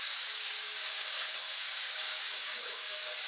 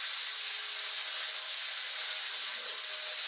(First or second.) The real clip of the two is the second